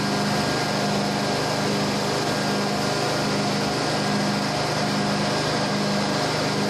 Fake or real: real